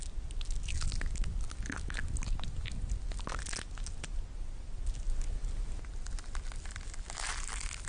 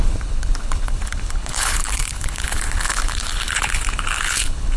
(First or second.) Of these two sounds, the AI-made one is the second